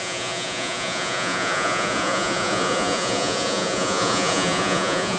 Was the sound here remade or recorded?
remade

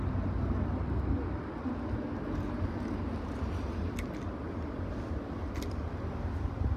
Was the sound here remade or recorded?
recorded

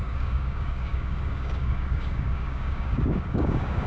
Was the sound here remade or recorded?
remade